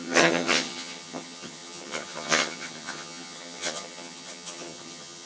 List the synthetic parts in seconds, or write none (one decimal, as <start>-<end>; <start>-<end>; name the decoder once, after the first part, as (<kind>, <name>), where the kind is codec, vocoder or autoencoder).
0.0-5.3 (vocoder, HiFi-GAN)